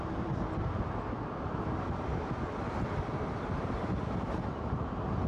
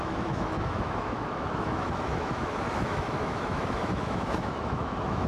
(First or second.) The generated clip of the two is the second